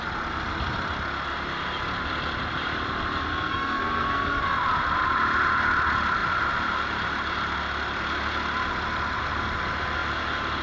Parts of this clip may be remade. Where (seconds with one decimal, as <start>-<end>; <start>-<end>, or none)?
3.3-4.4